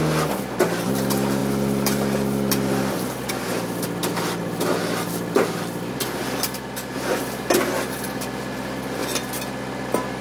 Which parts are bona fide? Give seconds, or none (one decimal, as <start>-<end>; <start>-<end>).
0.0-10.2